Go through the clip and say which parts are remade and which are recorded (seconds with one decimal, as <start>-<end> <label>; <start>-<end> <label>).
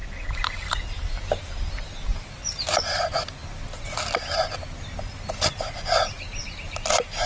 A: 0.0-1.2 remade; 1.2-2.1 recorded; 2.1-2.6 remade; 2.6-7.3 recorded